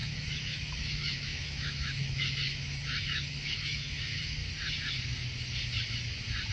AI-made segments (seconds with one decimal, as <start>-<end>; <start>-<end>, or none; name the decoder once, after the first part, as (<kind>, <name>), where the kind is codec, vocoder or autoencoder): 0.0-4.4 (autoencoder, DAC-VAE)